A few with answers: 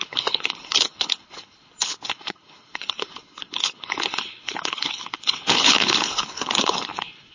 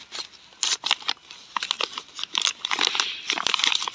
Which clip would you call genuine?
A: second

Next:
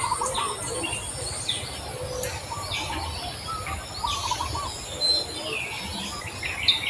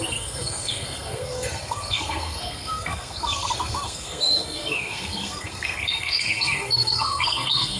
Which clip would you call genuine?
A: first